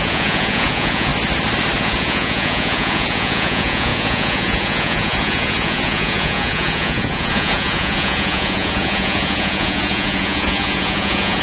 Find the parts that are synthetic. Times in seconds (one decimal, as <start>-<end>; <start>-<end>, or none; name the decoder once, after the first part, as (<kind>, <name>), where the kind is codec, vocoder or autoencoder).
0.0-1.1 (vocoder, Vocos); 1.8-11.4